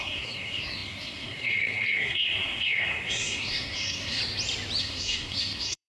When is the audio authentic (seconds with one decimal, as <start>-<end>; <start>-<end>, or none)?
4.2-4.8